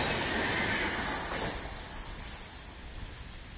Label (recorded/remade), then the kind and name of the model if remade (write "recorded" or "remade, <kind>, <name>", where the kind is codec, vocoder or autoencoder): recorded